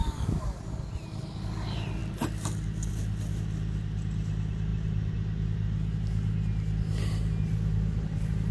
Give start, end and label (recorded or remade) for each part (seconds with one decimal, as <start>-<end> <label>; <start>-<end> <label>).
0.0-0.6 remade; 0.6-8.5 recorded